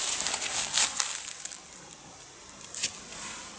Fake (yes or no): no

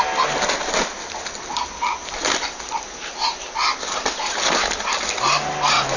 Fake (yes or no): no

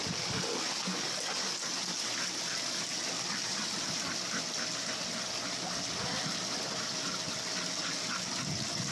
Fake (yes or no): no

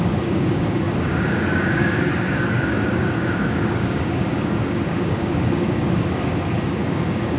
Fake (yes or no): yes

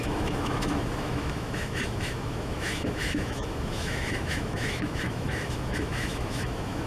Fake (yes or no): yes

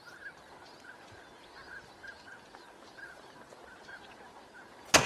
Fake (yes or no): no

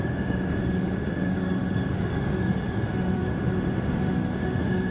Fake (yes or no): yes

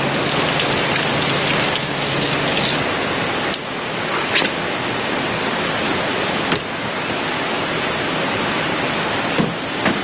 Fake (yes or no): no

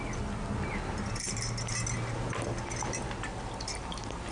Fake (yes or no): no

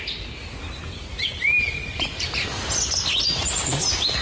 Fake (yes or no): no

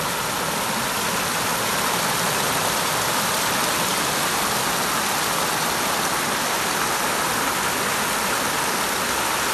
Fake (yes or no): no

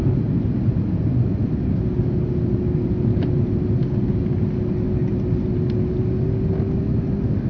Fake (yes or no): no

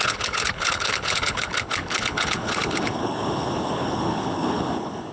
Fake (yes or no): yes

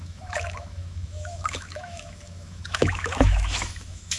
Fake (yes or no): yes